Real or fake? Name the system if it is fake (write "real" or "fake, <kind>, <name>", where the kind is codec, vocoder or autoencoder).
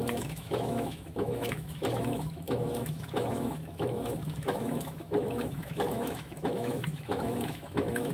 fake, autoencoder, DAC-VAE